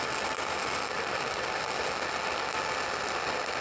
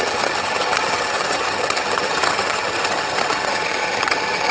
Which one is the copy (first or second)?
second